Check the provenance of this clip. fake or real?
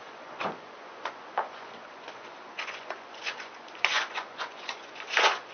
fake